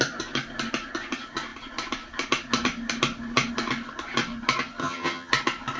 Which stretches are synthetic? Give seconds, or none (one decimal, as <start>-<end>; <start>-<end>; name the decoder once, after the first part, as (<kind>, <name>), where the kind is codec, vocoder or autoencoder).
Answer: 4.8-5.3 (vocoder, HiFi-GAN)